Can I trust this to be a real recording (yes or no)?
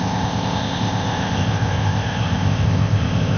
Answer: no